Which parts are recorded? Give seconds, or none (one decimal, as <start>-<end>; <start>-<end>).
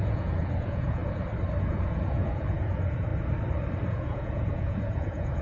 1.0-1.6; 3.1-3.9